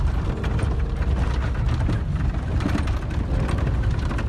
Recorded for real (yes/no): yes